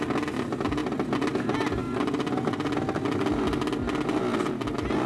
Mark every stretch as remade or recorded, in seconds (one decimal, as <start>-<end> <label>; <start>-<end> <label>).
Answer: 0.0-5.1 recorded